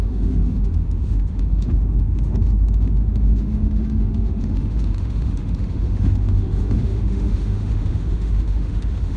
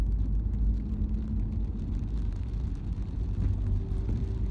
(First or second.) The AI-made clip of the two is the first